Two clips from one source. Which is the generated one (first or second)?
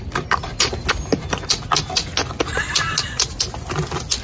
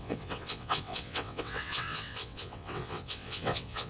second